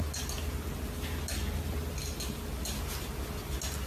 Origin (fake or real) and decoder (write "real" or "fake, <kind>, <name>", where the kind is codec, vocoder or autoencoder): real